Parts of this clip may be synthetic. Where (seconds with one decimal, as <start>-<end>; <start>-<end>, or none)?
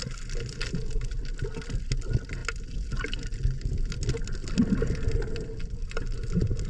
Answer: none